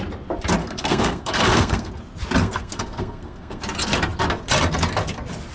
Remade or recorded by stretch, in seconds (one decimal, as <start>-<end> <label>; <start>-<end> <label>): 0.0-0.6 recorded; 0.6-1.9 remade; 1.9-2.4 recorded; 2.4-3.6 remade; 3.6-5.5 recorded